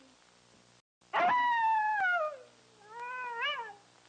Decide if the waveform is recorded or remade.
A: recorded